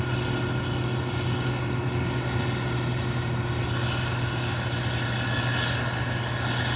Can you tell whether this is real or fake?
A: real